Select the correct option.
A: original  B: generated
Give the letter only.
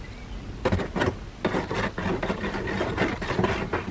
A